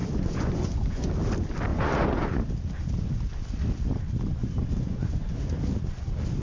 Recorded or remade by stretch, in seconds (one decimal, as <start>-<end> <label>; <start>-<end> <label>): 0.0-1.1 remade; 1.1-1.7 recorded; 1.7-2.4 remade; 2.4-4.4 recorded; 4.4-5.7 remade; 5.7-6.4 recorded

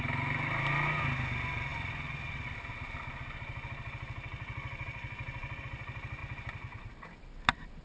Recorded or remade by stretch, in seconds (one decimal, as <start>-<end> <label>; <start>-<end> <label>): 0.0-7.8 recorded

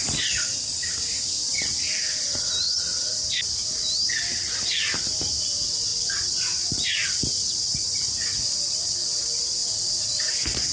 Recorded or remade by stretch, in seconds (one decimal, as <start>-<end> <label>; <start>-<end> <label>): 0.0-5.9 recorded; 5.9-8.9 remade; 8.9-9.6 recorded; 9.6-10.2 remade; 10.2-10.7 recorded

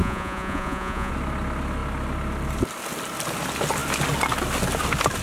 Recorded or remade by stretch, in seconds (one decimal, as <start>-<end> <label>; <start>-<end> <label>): 0.0-1.1 remade; 1.1-5.2 recorded

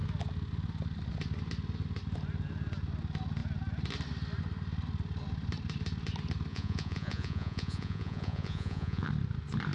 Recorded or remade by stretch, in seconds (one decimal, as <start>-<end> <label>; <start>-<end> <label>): 0.0-6.5 recorded; 6.5-9.1 remade; 9.1-9.7 recorded

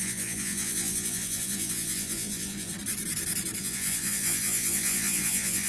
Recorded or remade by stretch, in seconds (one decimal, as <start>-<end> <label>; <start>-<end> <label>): 0.0-2.7 remade; 2.7-3.6 recorded; 3.6-5.7 remade